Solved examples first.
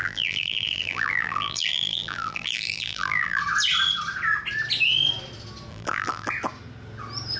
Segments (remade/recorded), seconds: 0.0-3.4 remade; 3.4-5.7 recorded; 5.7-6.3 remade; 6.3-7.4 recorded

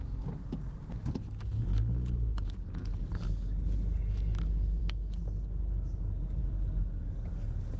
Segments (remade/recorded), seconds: 0.0-7.8 recorded

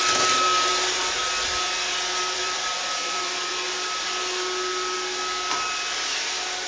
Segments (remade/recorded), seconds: 0.0-2.2 recorded; 2.2-3.5 remade; 3.5-6.7 recorded

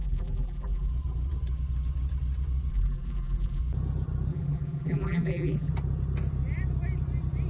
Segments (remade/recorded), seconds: 0.0-0.9 remade; 0.9-2.7 recorded; 2.7-3.6 remade; 3.6-4.3 recorded; 4.3-5.7 remade; 5.7-7.5 recorded

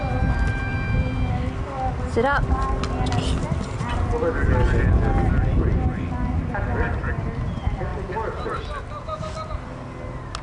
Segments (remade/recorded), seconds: 0.0-10.4 recorded

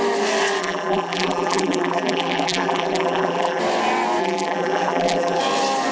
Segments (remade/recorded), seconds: 0.0-0.6 recorded; 0.6-3.6 remade; 3.6-4.2 recorded; 4.2-5.4 remade; 5.4-5.9 recorded